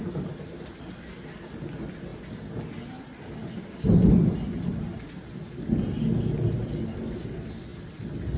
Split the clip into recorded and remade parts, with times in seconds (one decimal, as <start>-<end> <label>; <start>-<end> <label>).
0.0-8.4 recorded